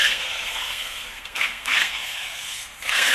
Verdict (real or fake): fake